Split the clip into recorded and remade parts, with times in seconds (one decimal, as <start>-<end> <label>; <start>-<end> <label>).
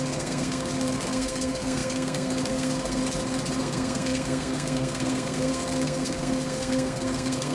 0.0-3.0 remade; 3.0-3.6 recorded; 3.6-7.5 remade